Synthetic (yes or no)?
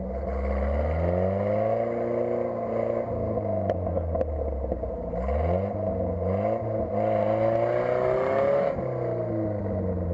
no